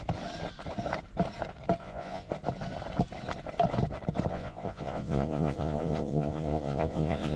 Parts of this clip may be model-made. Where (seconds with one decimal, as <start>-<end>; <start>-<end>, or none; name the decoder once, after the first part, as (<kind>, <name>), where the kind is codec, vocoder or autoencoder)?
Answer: 1.8-2.3 (vocoder, Vocos); 4.3-7.4